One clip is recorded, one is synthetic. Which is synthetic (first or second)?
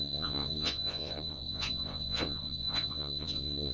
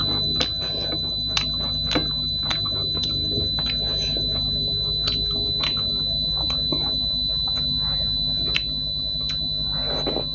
first